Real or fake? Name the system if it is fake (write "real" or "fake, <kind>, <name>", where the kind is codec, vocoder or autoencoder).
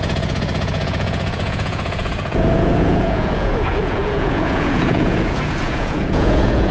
fake, vocoder, Vocos